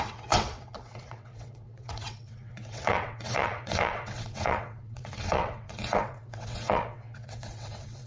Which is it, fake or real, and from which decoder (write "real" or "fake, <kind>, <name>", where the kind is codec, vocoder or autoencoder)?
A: fake, vocoder, WaveNeXt